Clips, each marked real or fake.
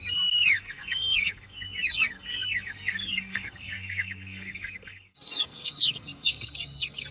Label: fake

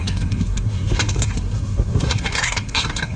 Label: fake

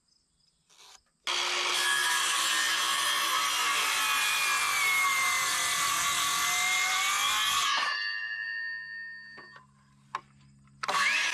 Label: real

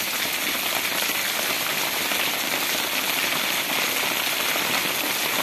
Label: real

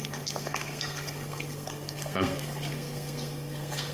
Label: fake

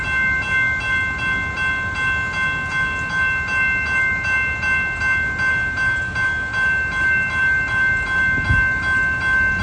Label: real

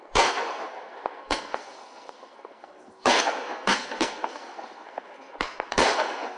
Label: fake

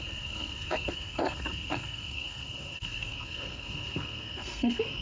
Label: fake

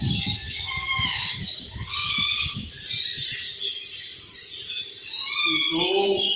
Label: real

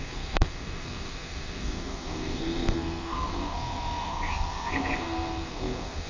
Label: fake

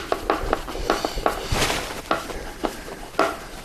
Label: real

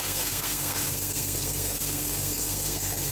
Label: fake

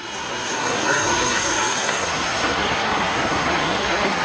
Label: fake